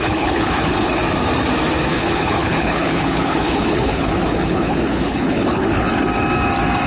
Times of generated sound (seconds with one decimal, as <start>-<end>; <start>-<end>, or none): 0.0-1.0; 1.9-5.9